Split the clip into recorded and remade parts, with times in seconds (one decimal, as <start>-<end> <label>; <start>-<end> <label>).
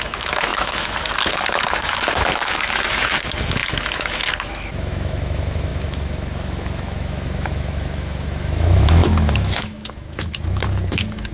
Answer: 0.0-11.3 remade